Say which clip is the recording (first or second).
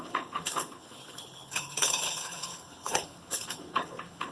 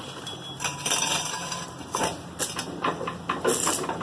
second